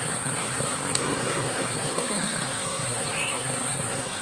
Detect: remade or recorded remade